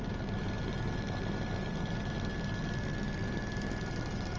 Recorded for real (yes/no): yes